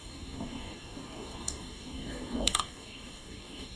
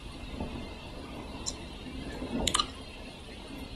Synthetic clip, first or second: first